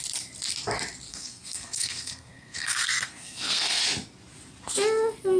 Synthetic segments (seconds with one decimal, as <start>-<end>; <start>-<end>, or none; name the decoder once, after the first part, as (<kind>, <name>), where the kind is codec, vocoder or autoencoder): 1.1-3.8 (codec, SNAC)